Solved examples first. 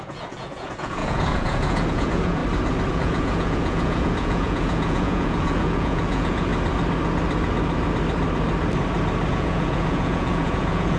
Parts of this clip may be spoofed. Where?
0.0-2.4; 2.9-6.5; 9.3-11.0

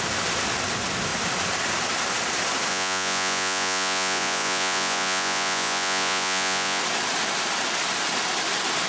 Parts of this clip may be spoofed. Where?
2.7-6.8